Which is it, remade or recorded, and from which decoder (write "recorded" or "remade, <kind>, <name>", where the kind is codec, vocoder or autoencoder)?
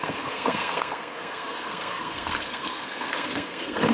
remade, codec, SNAC